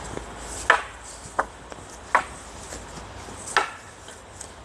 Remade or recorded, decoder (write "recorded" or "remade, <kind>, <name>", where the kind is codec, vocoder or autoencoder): recorded